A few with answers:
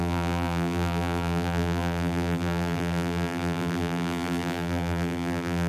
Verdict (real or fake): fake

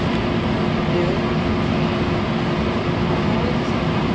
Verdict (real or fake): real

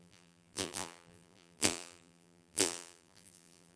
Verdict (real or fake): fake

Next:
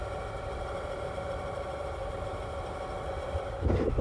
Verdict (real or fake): real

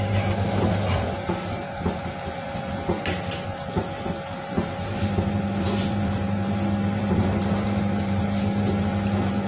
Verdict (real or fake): fake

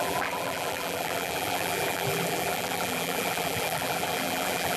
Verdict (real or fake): fake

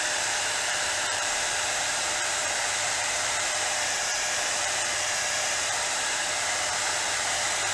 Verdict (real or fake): fake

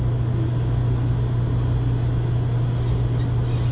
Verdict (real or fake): real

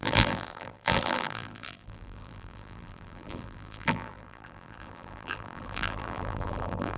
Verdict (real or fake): fake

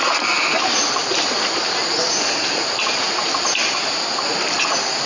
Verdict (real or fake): real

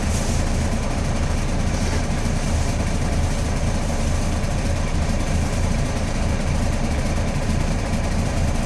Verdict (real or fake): fake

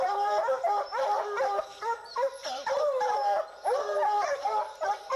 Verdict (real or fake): fake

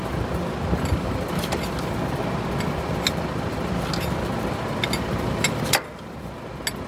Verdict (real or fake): real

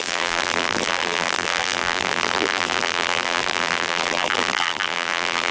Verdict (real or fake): fake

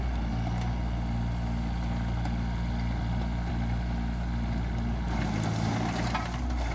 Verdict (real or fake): real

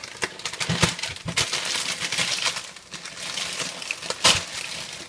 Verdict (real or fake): real